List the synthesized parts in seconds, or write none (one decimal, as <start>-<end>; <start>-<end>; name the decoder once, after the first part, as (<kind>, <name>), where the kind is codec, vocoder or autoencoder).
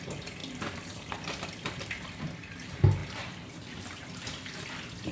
0.4-1.9 (vocoder, BigVGAN v2); 3.0-4.6